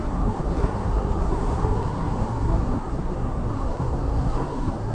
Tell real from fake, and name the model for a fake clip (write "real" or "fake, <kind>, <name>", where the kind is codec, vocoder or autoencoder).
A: fake, codec, SNAC